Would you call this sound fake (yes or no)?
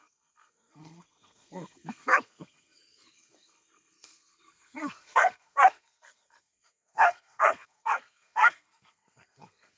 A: yes